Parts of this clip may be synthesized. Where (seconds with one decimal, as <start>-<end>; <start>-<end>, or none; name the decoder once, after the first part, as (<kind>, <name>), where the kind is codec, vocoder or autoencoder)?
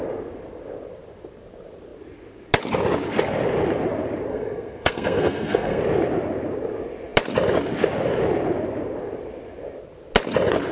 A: 4.3-5.8 (codec, SNAC)